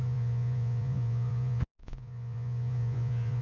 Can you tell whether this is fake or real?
fake